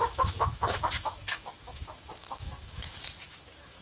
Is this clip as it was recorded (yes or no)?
no